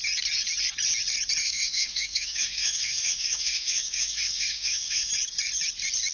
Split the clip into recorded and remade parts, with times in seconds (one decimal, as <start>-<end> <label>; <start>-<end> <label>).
0.0-1.4 recorded; 1.4-5.1 remade; 5.1-6.1 recorded

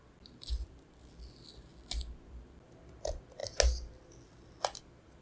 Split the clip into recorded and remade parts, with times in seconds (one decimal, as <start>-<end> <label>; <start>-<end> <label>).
0.0-1.7 remade; 1.7-2.3 recorded; 2.3-3.4 remade; 3.4-4.8 recorded; 4.8-5.2 remade

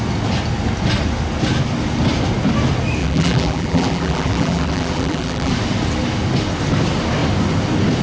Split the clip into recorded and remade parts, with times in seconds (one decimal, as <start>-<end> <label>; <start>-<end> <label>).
0.0-3.0 recorded; 3.0-5.5 remade; 5.5-8.0 recorded

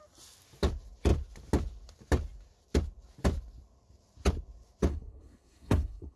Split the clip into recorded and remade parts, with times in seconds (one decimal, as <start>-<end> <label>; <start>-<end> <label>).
0.0-4.9 recorded; 4.9-6.2 remade

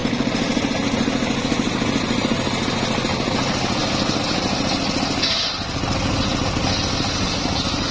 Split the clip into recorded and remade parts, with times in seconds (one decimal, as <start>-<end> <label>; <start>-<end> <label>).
0.0-7.9 recorded

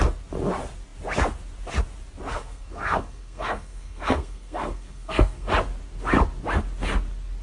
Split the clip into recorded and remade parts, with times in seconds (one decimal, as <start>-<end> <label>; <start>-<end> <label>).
0.0-2.3 recorded; 2.3-5.5 remade; 5.5-7.4 recorded

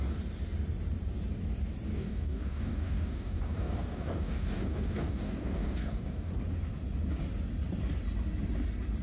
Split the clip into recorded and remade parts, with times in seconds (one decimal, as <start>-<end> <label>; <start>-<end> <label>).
0.0-1.9 recorded; 1.9-6.3 remade; 6.3-9.0 recorded